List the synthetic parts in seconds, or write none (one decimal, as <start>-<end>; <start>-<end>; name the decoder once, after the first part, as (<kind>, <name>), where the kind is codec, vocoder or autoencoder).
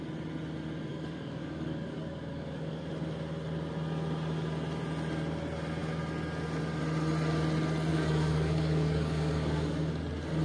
0.9-2.9 (codec, DAC); 7.9-10.0